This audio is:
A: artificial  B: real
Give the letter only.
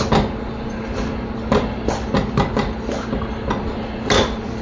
B